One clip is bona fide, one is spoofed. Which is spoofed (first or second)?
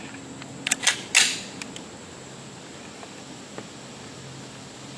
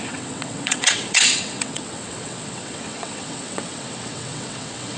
second